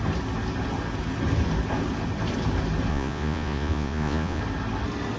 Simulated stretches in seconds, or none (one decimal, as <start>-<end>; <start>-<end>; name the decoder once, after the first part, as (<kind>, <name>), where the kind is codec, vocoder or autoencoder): 2.9-4.4 (vocoder, Vocos)